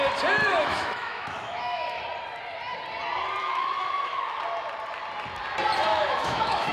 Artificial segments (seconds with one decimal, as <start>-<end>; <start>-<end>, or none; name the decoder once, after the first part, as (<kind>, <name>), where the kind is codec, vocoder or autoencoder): 0.4-2.0 (autoencoder, DAC-VAE); 3.4-4.4; 5.9-6.7